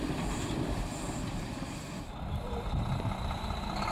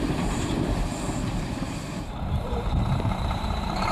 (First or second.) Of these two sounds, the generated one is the second